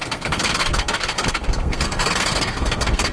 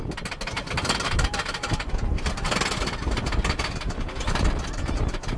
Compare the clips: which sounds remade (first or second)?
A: first